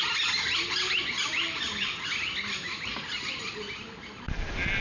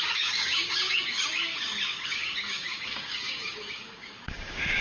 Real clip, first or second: first